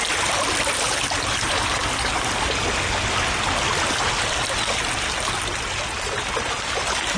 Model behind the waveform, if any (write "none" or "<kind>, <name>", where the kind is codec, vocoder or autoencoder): none